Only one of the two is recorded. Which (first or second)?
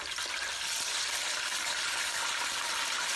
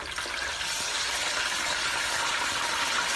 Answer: second